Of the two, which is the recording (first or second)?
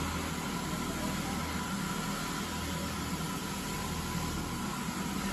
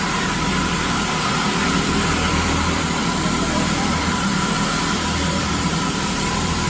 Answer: first